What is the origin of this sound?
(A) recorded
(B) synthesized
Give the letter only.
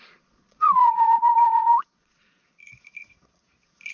B